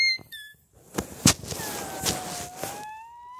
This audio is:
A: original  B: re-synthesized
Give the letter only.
A